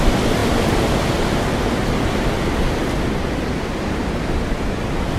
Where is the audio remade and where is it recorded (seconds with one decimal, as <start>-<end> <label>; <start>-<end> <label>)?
0.0-5.2 recorded